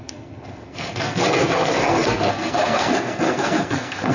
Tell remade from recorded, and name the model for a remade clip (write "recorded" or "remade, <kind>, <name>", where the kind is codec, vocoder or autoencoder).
remade, codec, SNAC